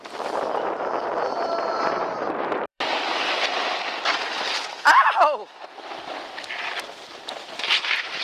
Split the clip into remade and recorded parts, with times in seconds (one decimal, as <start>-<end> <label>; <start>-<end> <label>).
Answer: 0.0-1.3 recorded; 1.3-3.2 remade; 3.2-8.2 recorded